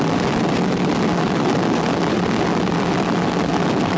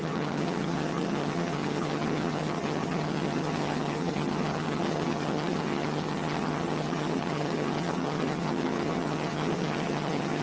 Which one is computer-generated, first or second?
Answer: second